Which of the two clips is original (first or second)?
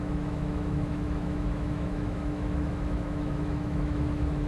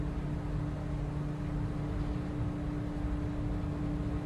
second